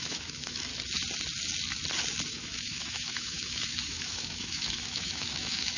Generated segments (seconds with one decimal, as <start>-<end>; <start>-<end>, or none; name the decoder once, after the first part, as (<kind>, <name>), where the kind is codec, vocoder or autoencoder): 0.0-0.7 (autoencoder, DAC-VAE); 2.3-5.8